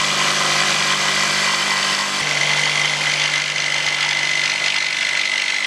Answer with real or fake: real